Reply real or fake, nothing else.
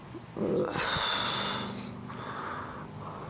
real